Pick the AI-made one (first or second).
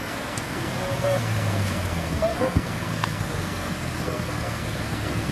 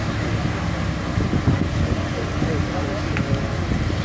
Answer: first